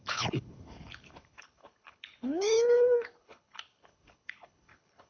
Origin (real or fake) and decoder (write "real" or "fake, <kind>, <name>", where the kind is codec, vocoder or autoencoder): fake, codec, HILCodec